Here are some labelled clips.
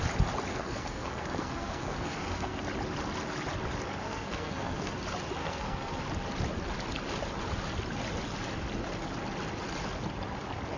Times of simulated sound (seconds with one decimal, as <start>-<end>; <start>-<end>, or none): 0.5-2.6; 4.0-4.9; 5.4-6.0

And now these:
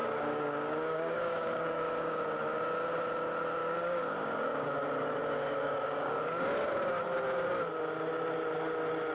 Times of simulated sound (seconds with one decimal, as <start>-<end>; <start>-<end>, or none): 0.0-2.2; 3.6-4.7; 5.2-6.5

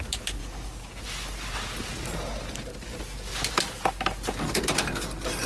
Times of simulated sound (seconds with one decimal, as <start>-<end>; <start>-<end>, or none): none

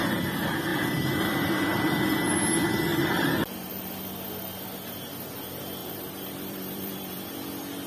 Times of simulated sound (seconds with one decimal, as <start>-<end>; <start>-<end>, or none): 0.7-1.5; 2.9-3.7; 5.8-7.3

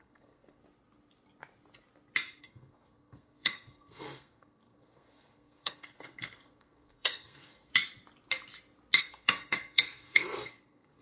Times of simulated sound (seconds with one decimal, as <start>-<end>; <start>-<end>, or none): 0.0-0.6; 2.4-7.7; 9.0-11.0